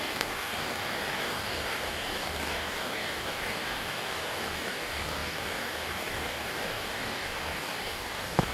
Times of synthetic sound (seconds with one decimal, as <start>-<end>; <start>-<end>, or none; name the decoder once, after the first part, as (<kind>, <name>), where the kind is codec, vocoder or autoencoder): 0.0-8.5 (codec, DAC)